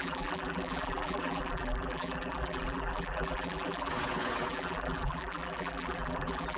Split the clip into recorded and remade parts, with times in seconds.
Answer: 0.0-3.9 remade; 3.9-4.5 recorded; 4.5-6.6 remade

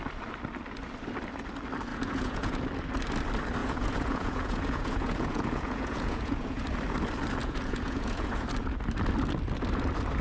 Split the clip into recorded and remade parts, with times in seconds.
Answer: 0.0-1.9 recorded; 1.9-2.6 remade; 2.6-3.6 recorded; 3.6-6.6 remade; 6.6-7.4 recorded; 7.4-8.5 remade; 8.5-10.2 recorded

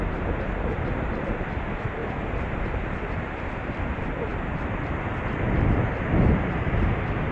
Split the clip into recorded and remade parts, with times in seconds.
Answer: 0.0-4.3 recorded; 4.3-5.8 remade; 5.8-7.3 recorded

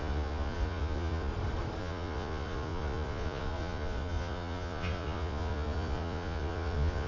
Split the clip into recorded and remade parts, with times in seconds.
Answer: 0.0-1.3 remade; 1.3-1.8 recorded; 1.8-7.1 remade

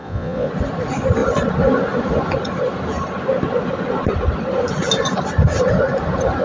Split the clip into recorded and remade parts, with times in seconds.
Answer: 0.0-0.5 remade; 0.5-6.4 recorded

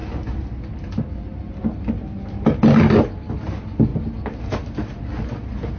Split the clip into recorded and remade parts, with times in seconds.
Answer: 0.0-5.8 recorded

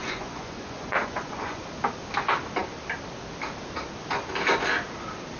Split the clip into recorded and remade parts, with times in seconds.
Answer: 0.0-1.6 remade; 1.6-5.4 recorded